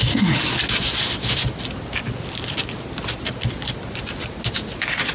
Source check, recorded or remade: recorded